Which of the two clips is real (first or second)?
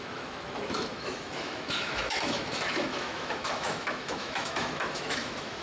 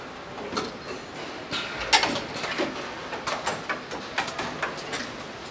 second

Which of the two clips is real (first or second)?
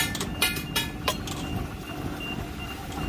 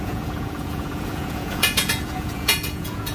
first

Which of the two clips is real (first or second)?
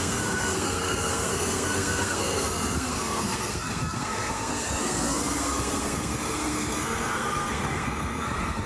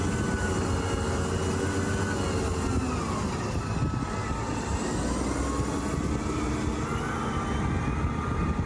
second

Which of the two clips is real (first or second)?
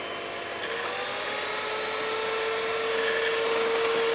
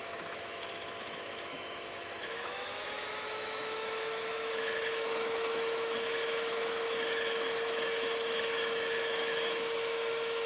first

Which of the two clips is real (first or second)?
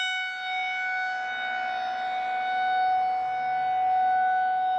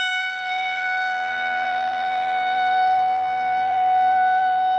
first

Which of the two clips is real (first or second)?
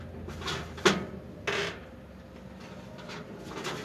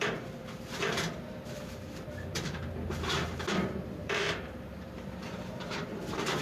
first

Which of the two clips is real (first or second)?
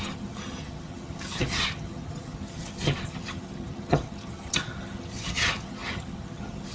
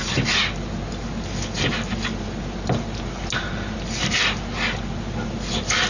second